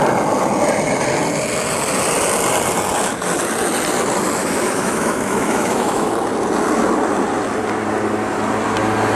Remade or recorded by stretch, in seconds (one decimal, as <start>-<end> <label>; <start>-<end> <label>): 0.0-4.4 recorded; 4.4-6.1 remade; 6.1-9.2 recorded